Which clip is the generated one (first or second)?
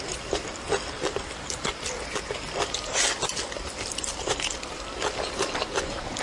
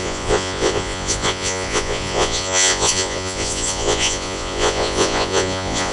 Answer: second